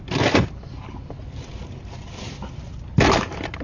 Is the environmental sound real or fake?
real